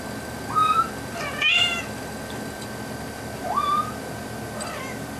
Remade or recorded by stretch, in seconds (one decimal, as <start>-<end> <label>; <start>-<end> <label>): 0.0-5.2 recorded